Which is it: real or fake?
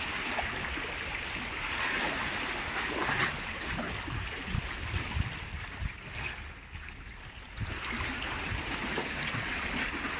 real